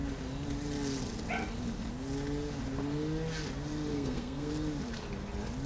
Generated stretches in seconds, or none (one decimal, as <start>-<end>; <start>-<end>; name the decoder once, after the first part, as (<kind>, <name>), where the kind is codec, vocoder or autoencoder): 3.9-4.5 (codec, SNAC)